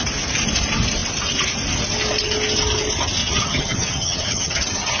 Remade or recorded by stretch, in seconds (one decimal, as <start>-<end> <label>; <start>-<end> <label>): 0.0-3.2 recorded; 3.2-5.0 remade